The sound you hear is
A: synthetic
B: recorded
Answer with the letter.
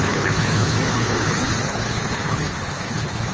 A